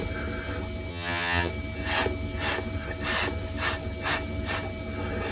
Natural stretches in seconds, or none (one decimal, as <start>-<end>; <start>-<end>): 0.0-0.9; 1.5-5.3